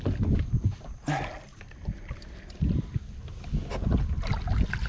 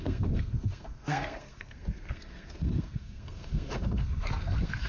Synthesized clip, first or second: second